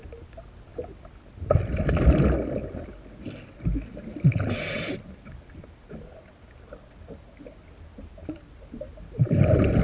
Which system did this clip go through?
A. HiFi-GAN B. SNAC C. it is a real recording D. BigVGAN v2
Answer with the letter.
C